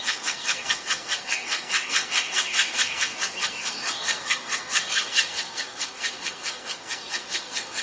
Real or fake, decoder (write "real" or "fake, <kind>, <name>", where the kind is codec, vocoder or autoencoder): fake, codec, SNAC